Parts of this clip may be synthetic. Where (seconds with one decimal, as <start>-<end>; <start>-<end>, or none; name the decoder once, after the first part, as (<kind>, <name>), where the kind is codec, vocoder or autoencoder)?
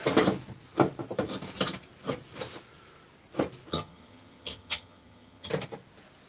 3.7-5.5 (vocoder, HiFi-GAN)